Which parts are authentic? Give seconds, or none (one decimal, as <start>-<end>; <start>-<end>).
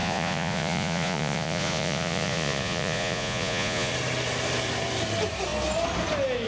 3.9-6.5